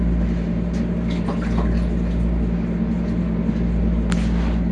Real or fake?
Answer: real